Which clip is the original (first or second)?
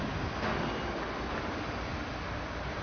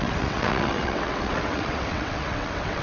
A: first